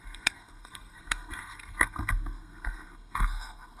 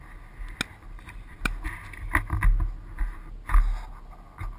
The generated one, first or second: first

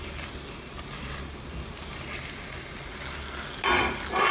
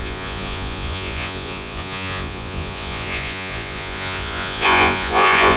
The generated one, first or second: second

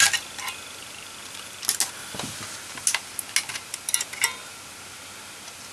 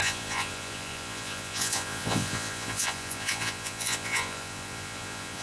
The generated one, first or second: second